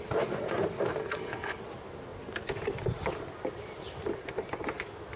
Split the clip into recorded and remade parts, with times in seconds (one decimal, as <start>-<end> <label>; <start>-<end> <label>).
0.0-1.0 recorded; 1.0-1.6 remade; 1.6-5.2 recorded